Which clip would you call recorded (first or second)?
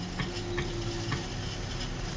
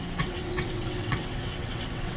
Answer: first